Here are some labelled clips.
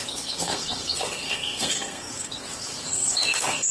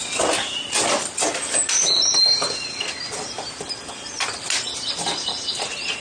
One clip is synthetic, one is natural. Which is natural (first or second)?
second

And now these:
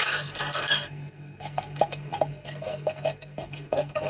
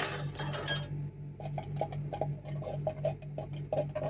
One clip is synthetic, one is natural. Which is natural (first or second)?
second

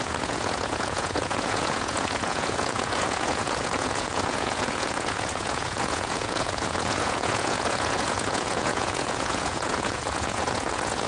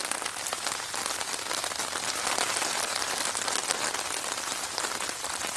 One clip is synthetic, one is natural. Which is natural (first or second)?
second